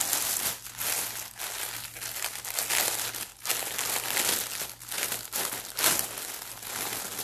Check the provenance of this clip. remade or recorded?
recorded